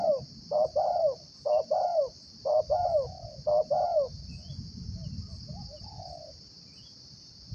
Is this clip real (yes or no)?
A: yes